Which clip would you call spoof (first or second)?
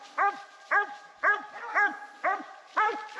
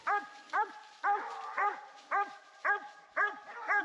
second